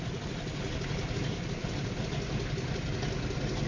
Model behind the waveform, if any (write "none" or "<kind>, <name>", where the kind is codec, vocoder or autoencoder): none